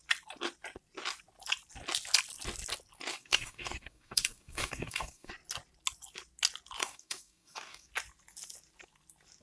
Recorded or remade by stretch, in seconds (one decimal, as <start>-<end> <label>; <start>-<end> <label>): 0.0-3.1 recorded; 3.1-5.3 remade; 5.3-6.8 recorded; 6.8-7.9 remade; 7.9-9.4 recorded